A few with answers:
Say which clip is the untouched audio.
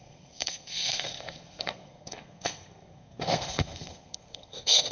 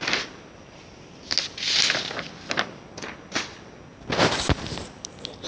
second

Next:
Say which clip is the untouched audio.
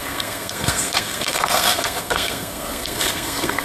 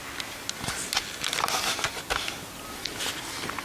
second